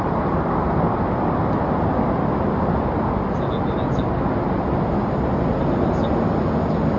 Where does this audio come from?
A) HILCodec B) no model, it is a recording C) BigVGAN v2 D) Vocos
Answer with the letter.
B